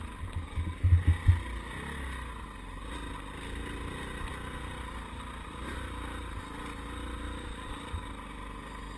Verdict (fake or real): real